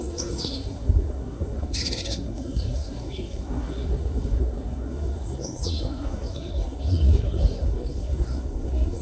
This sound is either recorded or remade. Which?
remade